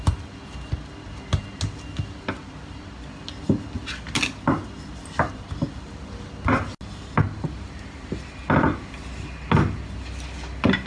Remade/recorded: recorded